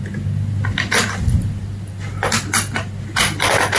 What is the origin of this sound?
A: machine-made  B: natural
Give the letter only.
B